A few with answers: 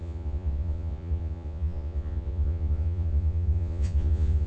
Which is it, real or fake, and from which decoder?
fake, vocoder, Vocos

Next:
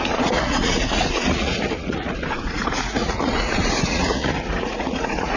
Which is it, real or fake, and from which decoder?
fake, vocoder, Vocos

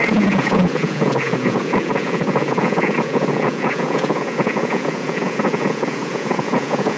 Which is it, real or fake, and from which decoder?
fake, vocoder, Vocos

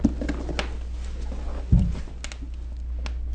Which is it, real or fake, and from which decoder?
real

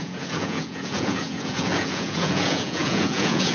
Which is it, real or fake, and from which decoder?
fake, vocoder, Vocos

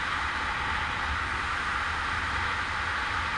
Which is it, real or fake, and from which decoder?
real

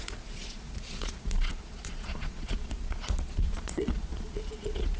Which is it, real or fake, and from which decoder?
fake, vocoder, Vocos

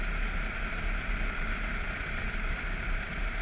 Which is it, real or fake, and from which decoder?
real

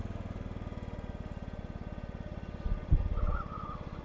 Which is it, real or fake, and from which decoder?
real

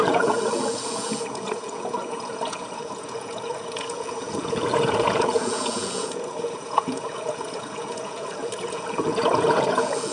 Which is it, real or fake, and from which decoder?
fake, vocoder, Vocos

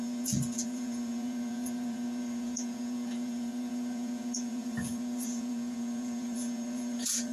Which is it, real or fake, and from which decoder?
fake, vocoder, Vocos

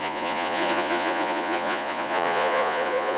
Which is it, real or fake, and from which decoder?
fake, vocoder, Vocos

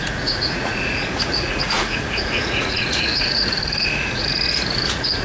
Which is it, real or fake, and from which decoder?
fake, vocoder, Vocos